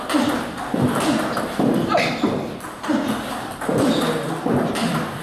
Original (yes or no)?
yes